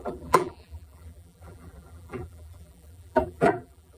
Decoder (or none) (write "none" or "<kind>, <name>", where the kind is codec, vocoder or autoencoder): vocoder, BigVGAN v2